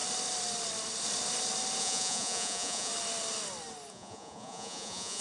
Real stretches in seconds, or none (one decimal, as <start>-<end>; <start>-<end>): 0.0-1.8; 2.9-3.9